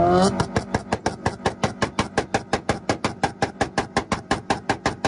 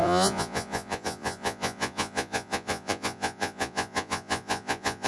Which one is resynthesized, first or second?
second